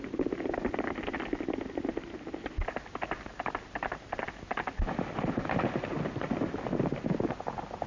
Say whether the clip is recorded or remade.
recorded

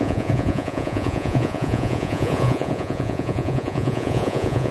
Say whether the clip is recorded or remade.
remade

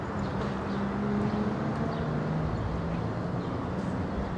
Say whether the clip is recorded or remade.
recorded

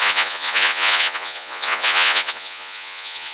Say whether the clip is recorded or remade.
remade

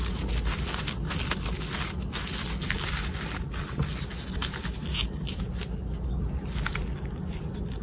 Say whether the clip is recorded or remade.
recorded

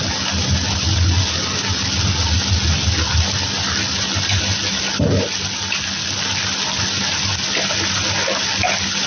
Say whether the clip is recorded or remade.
recorded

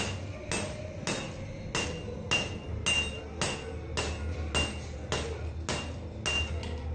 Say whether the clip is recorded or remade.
recorded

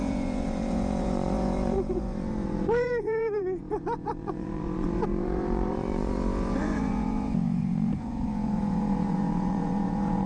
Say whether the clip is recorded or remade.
remade